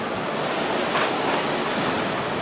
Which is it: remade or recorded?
recorded